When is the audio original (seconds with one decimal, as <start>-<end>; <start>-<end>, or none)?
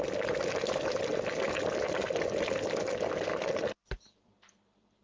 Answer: 0.0-5.0